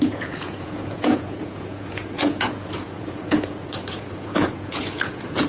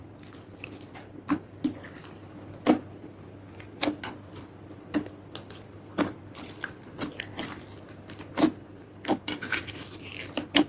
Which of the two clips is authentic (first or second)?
second